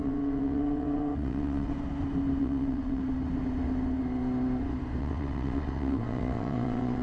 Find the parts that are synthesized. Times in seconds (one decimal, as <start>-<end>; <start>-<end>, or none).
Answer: 0.0-1.7; 2.4-3.0; 5.0-7.0